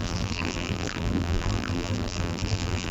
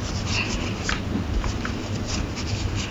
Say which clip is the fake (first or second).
first